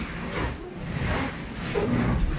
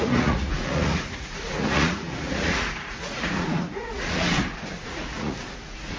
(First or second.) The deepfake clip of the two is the second